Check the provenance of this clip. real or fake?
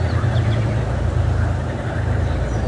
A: fake